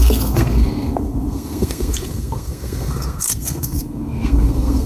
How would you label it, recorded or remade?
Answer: remade